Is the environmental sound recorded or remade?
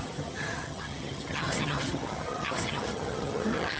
remade